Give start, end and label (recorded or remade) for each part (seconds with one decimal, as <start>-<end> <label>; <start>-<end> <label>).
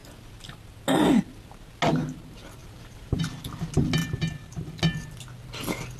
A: 0.0-2.6 recorded; 2.6-3.2 remade; 3.2-4.0 recorded; 4.0-4.8 remade; 4.8-6.0 recorded